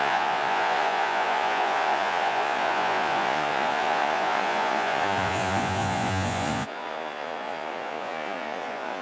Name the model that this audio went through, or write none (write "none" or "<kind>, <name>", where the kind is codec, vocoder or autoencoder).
vocoder, Vocos